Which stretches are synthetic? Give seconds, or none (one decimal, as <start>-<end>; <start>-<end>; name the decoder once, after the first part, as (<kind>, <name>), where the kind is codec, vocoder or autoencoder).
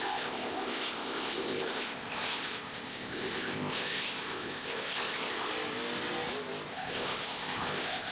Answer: 0.0-5.5 (codec, ZipCodec); 6.7-8.1